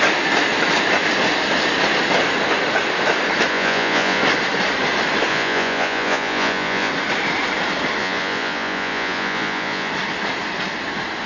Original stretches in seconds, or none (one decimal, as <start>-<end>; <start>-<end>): 0.0-3.5; 4.2-5.3; 6.9-8.0; 9.9-11.3